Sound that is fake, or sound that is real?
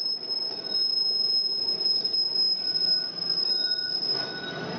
real